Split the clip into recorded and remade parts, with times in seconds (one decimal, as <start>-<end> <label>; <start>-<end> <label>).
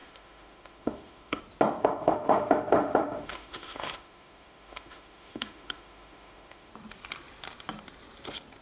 0.0-1.4 remade; 1.4-1.8 recorded; 1.8-6.7 remade; 6.7-8.6 recorded